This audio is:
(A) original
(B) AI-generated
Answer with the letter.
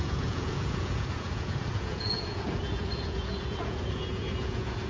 B